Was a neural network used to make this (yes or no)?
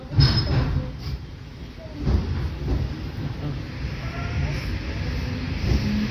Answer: no